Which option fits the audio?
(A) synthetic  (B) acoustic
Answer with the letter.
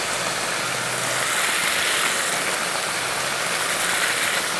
B